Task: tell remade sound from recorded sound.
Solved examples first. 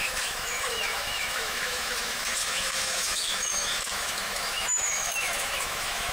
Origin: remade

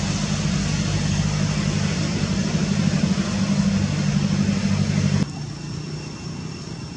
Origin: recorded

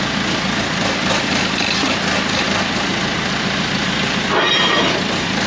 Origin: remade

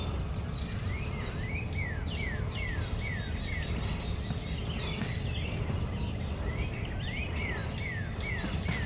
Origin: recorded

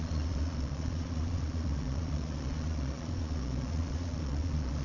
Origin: remade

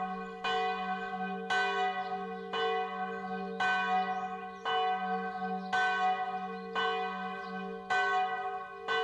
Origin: recorded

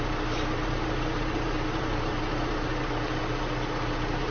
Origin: remade